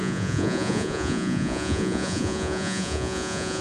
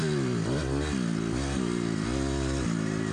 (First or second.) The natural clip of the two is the second